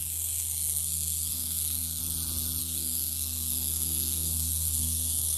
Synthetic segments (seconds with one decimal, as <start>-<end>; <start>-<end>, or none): 0.0-2.0; 2.6-5.4